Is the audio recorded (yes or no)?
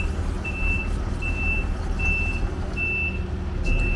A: yes